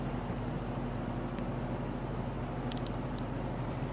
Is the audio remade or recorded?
recorded